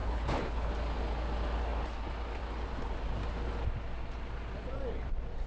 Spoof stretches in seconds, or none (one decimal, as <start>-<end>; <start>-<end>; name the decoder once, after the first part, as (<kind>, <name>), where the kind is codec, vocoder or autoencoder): 0.0-0.7 (codec, HILCodec)